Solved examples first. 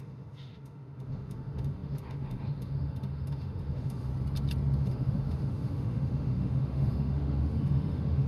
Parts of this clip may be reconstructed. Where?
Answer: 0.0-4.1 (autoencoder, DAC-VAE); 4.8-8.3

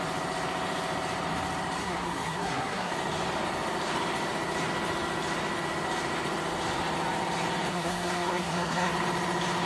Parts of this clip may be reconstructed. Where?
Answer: 1.8-2.9 (codec, SNAC); 7.7-8.9

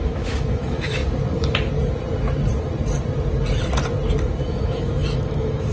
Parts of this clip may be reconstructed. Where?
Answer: 0.0-1.0 (autoencoder, DAC-VAE); 4.4-5.7

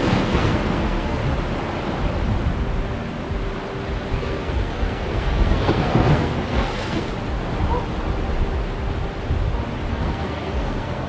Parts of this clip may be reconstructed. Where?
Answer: 0.0-1.2 (codec, SNAC); 4.1-7.1; 9.9-11.1

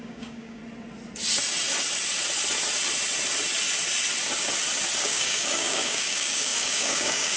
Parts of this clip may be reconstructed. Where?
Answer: 0.0-0.6 (codec, DAC); 5.0-7.4